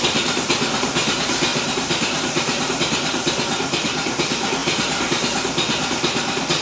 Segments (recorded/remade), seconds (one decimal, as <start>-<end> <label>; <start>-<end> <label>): 0.0-1.5 recorded; 1.5-2.8 remade; 2.8-6.6 recorded